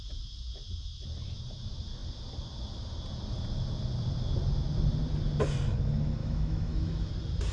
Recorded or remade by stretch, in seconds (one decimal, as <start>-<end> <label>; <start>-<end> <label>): 0.0-6.2 recorded; 6.2-7.1 remade; 7.1-7.5 recorded